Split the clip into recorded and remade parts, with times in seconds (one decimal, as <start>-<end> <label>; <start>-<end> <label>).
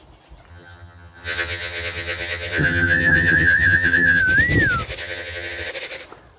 0.0-0.5 recorded; 0.5-4.2 remade; 4.2-5.0 recorded; 5.0-5.7 remade; 5.7-6.4 recorded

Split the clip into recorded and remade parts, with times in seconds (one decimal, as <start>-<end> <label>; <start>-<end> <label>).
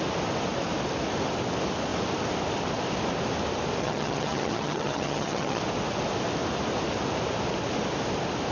0.0-3.8 recorded; 3.8-5.6 remade; 5.6-8.5 recorded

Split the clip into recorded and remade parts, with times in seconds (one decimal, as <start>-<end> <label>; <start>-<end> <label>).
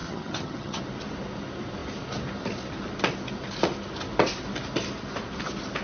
0.0-0.8 remade; 0.8-5.8 recorded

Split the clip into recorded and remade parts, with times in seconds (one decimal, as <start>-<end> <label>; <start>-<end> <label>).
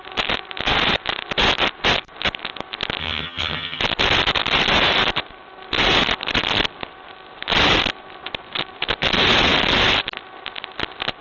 0.0-3.0 recorded; 3.0-3.8 remade; 3.8-11.2 recorded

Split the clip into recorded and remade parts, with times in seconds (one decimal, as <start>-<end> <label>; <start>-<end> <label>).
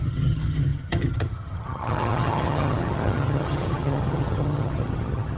0.0-5.4 remade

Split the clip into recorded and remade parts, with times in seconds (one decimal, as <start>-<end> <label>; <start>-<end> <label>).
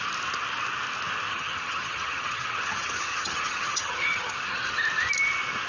0.0-1.3 recorded; 1.3-4.7 remade; 4.7-5.7 recorded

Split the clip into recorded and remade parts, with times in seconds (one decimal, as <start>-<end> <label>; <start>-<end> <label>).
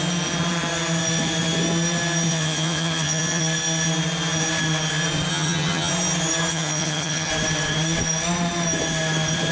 0.0-2.3 recorded; 2.3-3.4 remade; 3.4-5.3 recorded; 5.3-5.9 remade; 5.9-6.5 recorded; 6.5-7.3 remade; 7.3-9.5 recorded